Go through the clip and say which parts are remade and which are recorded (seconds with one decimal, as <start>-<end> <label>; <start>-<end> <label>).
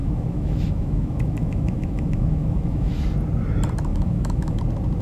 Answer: 0.0-3.0 remade; 3.0-3.9 recorded; 3.9-4.6 remade; 4.6-5.0 recorded